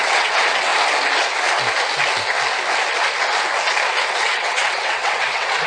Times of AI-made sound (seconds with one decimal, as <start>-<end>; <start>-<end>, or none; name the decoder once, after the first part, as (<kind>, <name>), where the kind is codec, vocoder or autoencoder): 0.0-0.7 (vocoder, WaveNeXt); 4.1-5.7